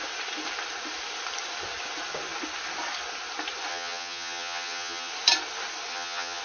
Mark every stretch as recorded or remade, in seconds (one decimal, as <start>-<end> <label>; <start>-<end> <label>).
0.0-3.7 recorded; 3.7-5.1 remade; 5.1-5.9 recorded; 5.9-6.4 remade